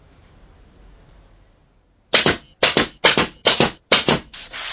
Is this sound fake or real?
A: real